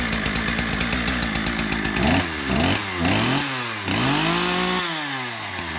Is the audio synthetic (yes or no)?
no